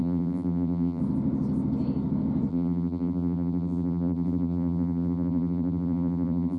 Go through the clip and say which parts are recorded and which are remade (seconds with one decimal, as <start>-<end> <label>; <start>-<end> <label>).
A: 0.0-1.0 remade; 1.0-2.5 recorded; 2.5-6.6 remade